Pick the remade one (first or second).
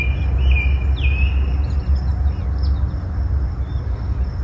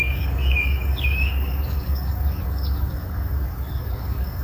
second